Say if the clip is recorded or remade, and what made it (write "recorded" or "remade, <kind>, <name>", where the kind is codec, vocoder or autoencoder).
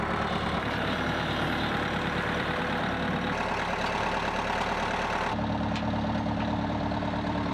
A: remade, vocoder, BigVGAN v2